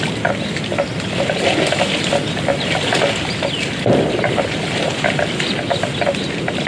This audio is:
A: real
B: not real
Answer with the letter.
A